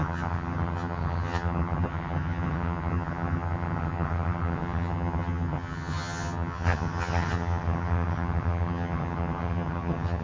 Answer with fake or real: fake